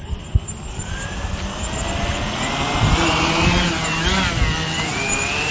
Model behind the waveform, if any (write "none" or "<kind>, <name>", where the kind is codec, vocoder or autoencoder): none